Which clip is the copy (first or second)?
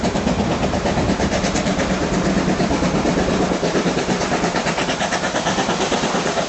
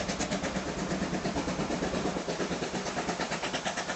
first